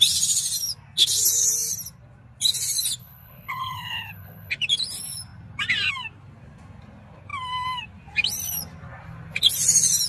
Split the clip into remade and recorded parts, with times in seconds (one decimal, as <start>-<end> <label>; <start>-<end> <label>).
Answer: 0.0-3.0 recorded; 3.0-4.5 remade; 4.5-10.1 recorded